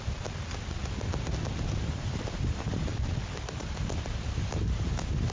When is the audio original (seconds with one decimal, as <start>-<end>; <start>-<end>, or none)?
0.8-1.6; 2.9-3.5